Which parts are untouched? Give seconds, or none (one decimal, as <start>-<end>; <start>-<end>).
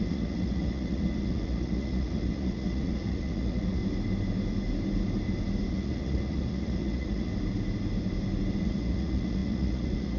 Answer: 3.8-5.7; 7.3-8.6